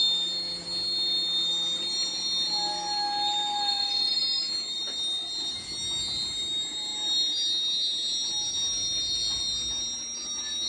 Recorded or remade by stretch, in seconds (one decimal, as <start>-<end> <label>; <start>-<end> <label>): 0.0-10.7 recorded